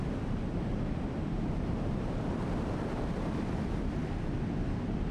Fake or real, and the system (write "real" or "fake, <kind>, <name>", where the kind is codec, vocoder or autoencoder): real